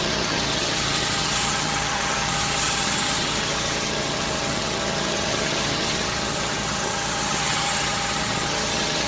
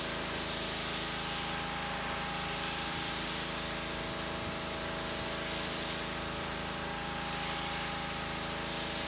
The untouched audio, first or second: second